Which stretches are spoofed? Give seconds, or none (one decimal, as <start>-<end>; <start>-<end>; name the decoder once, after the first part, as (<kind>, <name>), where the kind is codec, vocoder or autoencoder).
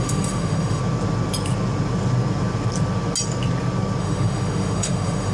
0.0-0.8 (autoencoder, DAC-VAE); 4.0-5.3